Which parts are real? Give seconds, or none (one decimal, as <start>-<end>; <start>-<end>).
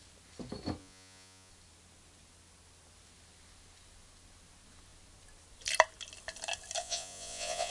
0.0-0.8; 1.5-6.8